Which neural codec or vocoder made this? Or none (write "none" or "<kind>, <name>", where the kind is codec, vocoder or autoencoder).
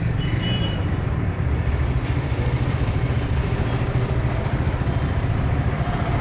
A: vocoder, BigVGAN v2